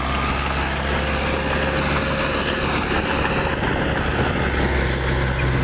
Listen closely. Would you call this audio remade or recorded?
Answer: recorded